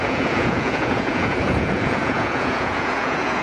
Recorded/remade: remade